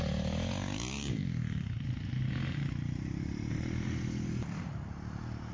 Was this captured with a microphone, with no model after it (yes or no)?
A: yes